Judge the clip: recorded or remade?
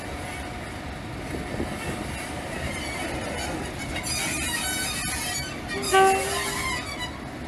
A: recorded